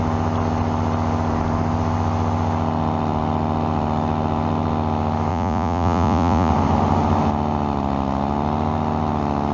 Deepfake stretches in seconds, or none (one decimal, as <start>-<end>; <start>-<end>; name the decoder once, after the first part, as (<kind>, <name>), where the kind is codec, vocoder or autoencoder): 5.3-6.5 (vocoder, Vocos)